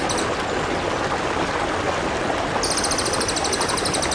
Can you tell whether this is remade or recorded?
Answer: recorded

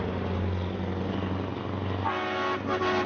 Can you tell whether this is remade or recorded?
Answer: recorded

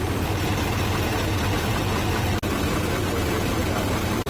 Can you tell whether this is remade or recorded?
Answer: remade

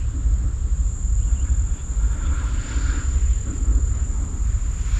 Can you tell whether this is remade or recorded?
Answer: recorded